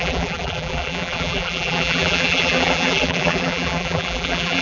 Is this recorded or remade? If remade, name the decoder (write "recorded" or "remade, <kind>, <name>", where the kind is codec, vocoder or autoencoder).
remade, vocoder, BigVGAN v2